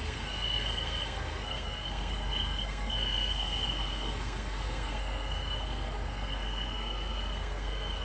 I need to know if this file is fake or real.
fake